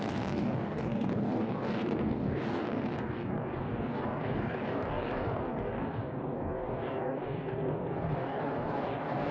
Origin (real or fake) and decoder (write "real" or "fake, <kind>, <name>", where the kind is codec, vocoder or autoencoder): fake, codec, DAC